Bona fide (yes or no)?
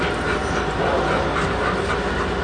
yes